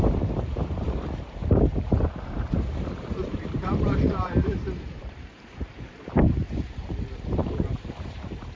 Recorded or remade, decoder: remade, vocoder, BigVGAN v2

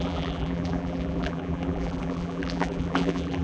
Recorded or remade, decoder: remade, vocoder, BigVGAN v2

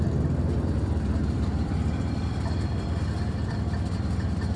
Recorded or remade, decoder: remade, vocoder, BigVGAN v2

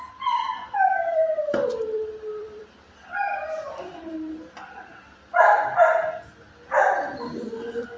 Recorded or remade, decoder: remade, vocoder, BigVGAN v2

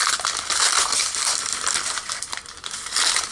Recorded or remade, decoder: remade, vocoder, BigVGAN v2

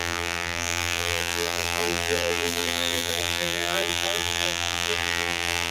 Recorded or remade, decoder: remade, vocoder, BigVGAN v2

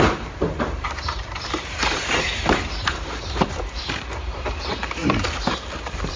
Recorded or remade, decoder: remade, vocoder, BigVGAN v2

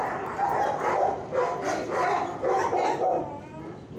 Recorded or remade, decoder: recorded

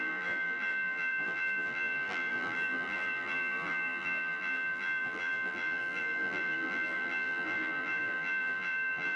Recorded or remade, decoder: remade, vocoder, BigVGAN v2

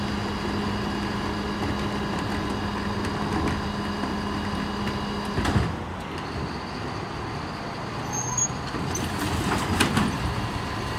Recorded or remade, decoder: recorded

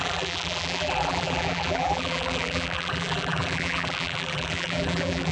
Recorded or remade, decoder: remade, vocoder, BigVGAN v2